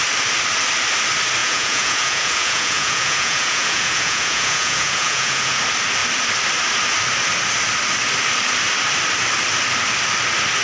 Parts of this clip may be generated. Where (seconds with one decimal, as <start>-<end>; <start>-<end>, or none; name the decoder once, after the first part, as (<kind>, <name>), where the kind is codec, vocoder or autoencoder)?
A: 1.4-5.6 (vocoder, Vocos)